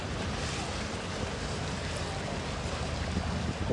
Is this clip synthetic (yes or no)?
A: no